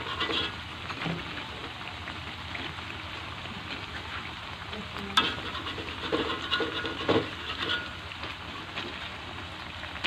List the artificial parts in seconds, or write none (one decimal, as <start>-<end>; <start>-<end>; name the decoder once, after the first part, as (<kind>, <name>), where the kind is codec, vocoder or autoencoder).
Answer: none